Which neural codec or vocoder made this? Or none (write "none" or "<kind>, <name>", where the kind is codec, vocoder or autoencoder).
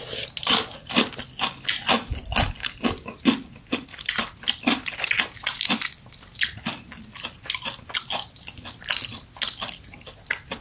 none